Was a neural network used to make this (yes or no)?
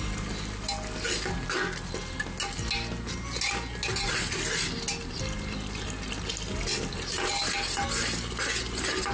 no